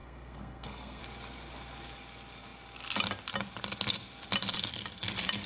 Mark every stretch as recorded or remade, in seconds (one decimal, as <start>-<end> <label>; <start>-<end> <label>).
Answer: 0.0-1.0 remade; 1.0-5.5 recorded